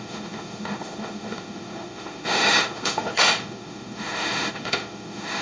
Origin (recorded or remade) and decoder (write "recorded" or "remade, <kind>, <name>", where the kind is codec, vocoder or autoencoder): remade, autoencoder, DAC-VAE